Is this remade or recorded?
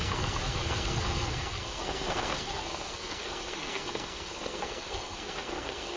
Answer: remade